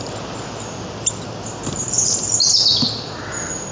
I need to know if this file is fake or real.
real